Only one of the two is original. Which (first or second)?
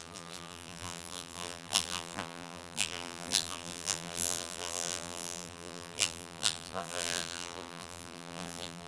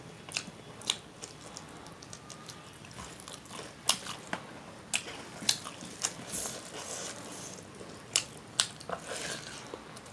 second